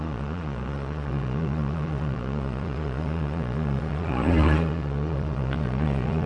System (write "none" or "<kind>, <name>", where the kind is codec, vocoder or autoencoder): vocoder, Vocos